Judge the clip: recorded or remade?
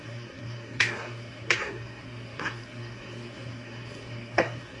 remade